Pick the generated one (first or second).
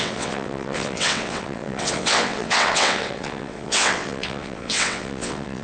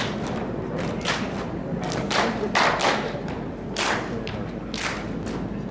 first